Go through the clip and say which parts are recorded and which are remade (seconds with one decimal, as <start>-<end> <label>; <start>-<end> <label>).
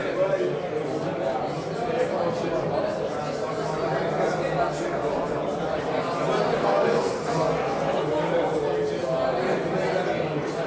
0.0-6.6 recorded; 6.6-7.3 remade; 7.3-10.7 recorded